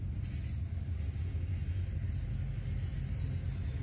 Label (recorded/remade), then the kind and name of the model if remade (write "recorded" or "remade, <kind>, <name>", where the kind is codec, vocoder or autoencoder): recorded